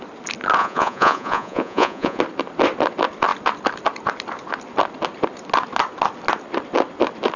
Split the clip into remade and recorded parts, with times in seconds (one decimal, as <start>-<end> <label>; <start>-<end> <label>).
0.0-0.6 recorded; 0.6-2.2 remade; 2.2-7.4 recorded